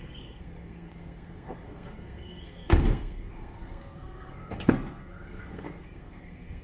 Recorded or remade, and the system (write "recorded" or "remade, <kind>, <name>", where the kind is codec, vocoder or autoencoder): remade, codec, SNAC